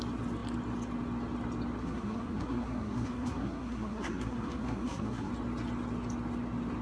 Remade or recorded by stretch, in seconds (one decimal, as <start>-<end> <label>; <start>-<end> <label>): 0.0-1.8 recorded; 1.8-5.3 remade; 5.3-6.8 recorded